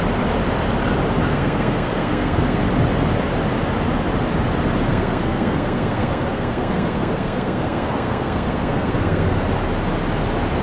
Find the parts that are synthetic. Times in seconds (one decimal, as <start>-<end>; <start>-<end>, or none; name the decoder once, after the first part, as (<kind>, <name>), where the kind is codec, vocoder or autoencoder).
1.3-2.6 (codec, SNAC); 4.9-9.3